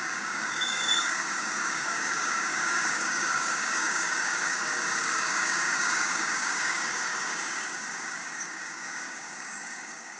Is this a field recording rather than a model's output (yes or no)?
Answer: no